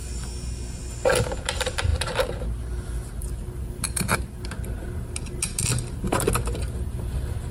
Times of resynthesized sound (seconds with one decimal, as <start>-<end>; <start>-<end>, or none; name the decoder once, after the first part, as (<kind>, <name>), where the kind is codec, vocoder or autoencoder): none